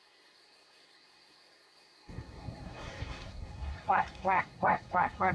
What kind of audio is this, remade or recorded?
remade